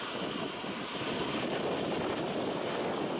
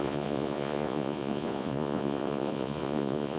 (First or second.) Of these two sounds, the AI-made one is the second